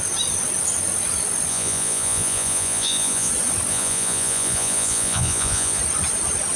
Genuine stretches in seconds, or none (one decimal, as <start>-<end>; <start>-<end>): 0.0-1.5; 3.3-3.7; 5.8-6.6